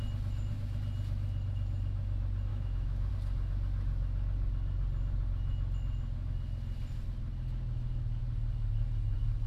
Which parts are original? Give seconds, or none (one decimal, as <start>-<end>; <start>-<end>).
0.0-2.5; 3.1-9.5

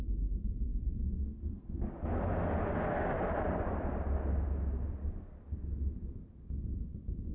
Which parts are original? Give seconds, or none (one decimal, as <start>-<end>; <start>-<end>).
0.0-0.7; 1.9-7.3

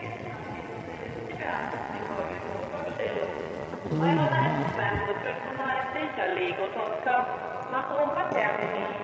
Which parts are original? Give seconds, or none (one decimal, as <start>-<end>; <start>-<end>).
none

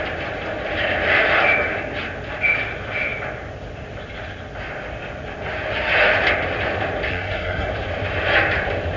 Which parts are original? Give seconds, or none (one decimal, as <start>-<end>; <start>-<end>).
0.0-7.1; 7.7-9.0

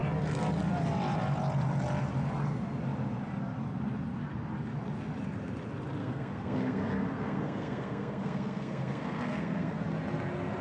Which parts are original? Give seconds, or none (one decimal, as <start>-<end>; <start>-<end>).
0.0-6.0; 9.8-10.6